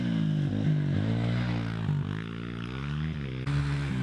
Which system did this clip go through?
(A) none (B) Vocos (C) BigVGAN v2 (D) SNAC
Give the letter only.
A